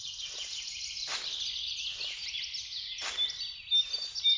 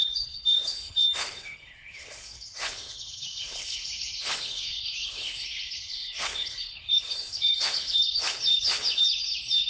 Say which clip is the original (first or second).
first